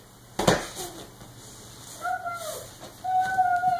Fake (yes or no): no